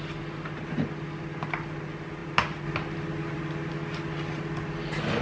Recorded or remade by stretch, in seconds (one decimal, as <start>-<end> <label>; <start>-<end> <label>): 0.0-5.2 recorded